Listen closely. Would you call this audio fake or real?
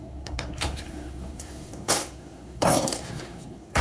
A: fake